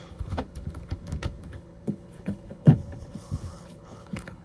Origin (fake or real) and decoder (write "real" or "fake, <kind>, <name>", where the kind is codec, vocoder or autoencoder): fake, codec, HILCodec